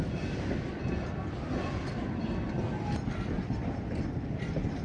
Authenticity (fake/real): real